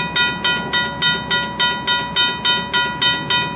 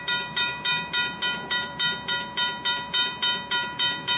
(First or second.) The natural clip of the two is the first